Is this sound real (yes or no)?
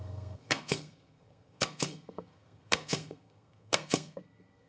no